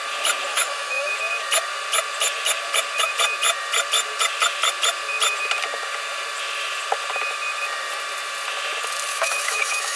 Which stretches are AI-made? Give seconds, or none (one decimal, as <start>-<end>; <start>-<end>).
0.5-1.1; 9.1-10.0